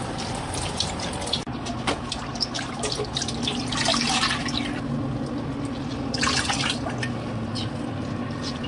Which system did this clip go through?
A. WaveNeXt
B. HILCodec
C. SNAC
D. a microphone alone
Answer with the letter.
D